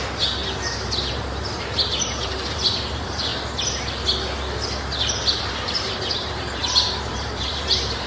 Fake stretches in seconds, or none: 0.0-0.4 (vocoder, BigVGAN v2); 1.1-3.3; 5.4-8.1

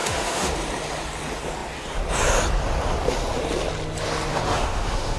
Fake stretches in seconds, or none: 0.0-0.5 (autoencoder, DAC-VAE); 4.3-5.2